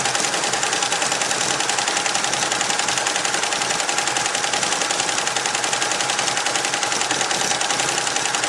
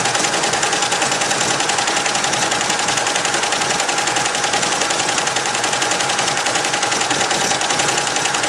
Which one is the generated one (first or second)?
second